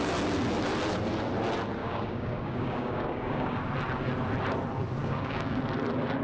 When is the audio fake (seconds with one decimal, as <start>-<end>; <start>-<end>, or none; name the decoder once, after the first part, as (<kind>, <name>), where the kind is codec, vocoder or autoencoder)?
1.8-3.6 (codec, DAC); 5.0-5.6

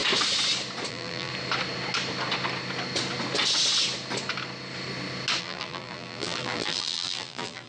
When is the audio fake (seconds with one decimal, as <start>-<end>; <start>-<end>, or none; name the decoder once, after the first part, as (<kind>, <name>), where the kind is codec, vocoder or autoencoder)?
0.9-1.3 (vocoder, BigVGAN v2); 5.4-7.7

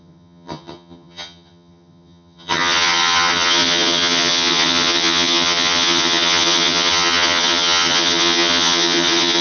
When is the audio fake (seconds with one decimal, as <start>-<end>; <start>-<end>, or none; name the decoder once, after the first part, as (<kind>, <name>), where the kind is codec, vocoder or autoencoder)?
0.0-9.4 (vocoder, HiFi-GAN)

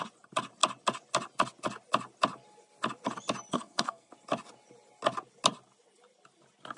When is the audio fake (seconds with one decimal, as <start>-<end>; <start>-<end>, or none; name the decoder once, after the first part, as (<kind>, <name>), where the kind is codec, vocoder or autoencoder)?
3.5-4.1 (codec, SNAC)

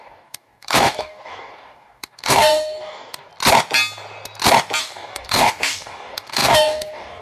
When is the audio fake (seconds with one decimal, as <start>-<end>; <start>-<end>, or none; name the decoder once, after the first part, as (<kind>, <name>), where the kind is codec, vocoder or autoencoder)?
0.0-3.3 (codec, DAC); 4.8-7.2

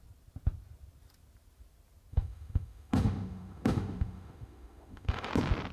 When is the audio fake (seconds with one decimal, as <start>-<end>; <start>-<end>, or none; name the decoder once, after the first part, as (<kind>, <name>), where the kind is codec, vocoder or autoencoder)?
2.1-5.3 (autoencoder, DAC-VAE)

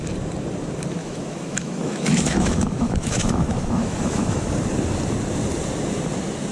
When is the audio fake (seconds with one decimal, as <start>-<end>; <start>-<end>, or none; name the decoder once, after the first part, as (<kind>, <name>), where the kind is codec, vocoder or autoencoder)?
1.0-4.5 (autoencoder, DAC-VAE)